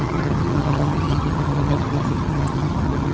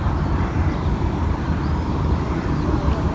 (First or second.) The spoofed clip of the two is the first